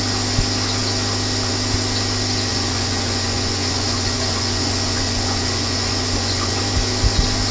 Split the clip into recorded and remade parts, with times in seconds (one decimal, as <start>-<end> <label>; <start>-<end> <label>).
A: 0.0-2.5 recorded; 2.5-6.6 remade; 6.6-7.5 recorded